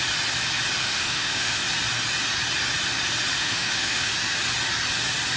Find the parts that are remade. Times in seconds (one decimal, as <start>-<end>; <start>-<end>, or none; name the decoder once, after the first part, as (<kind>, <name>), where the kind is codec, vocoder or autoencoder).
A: 0.8-1.6 (autoencoder, DAC-VAE); 3.4-4.1